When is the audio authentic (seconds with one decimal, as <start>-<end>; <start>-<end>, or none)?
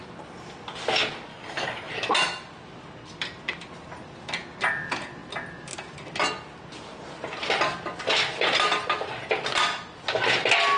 0.0-1.3; 1.9-10.8